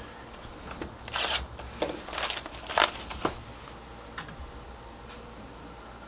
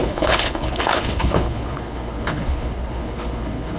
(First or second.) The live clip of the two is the first